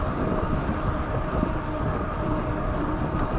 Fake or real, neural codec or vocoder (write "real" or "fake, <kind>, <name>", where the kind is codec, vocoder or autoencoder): fake, vocoder, BigVGAN v2